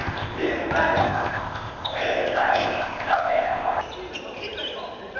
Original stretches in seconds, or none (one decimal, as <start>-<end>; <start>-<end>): 0.5-1.0; 3.8-5.2